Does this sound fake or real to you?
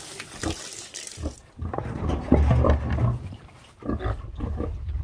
real